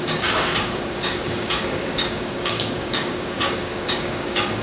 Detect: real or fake fake